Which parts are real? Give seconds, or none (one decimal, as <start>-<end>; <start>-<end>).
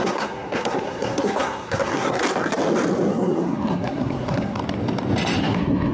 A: 2.2-3.1; 4.6-5.4